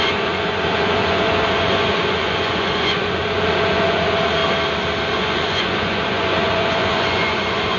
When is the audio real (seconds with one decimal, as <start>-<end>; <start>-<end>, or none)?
4.4-5.1